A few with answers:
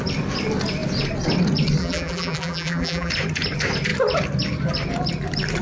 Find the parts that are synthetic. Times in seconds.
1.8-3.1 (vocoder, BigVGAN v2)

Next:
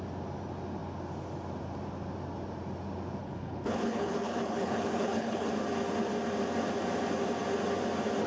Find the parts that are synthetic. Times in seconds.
3.2-5.5 (codec, HILCodec)

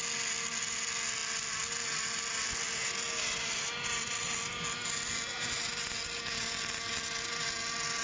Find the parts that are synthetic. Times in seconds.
none

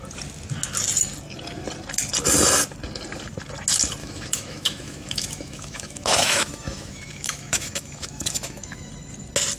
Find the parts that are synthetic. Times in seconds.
4.0-8.9 (autoencoder, DAC-VAE)

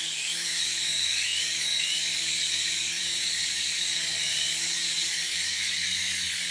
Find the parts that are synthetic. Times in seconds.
0.0-6.5 (codec, DAC)

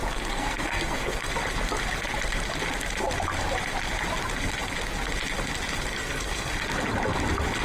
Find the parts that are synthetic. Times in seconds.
0.0-1.3 (codec, SNAC); 5.9-6.5

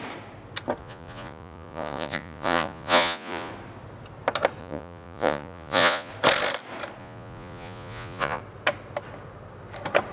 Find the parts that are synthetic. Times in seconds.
0.8-3.5 (vocoder, Vocos); 4.6-6.1; 7.0-8.4